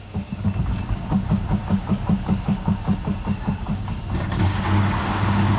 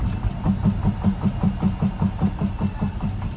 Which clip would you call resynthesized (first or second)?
first